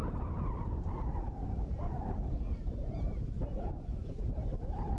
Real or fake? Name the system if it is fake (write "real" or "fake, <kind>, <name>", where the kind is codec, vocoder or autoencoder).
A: fake, vocoder, BigVGAN v2